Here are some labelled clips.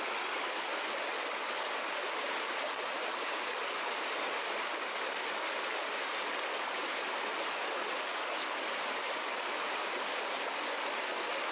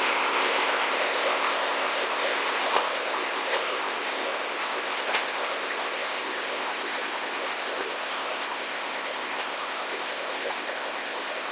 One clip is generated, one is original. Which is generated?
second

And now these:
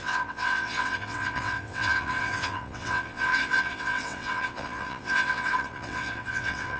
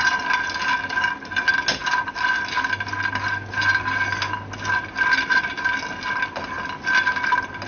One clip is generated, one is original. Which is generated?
first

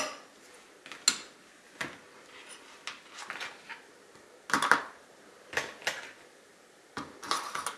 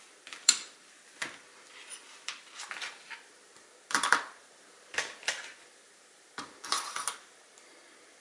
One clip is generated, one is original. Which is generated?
second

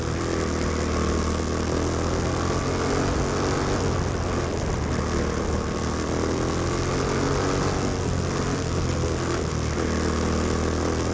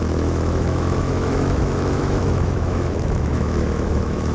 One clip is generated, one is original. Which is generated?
second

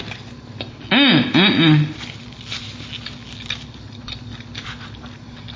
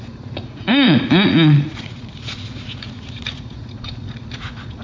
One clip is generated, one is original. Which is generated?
second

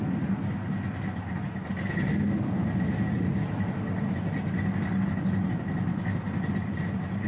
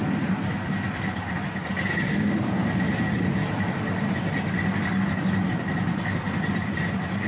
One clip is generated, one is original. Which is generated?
second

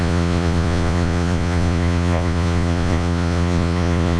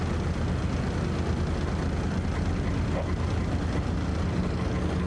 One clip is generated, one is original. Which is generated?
first